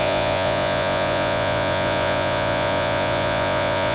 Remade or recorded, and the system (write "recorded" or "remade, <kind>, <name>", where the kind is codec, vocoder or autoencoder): remade, vocoder, Vocos